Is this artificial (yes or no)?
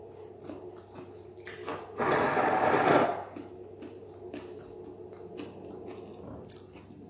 no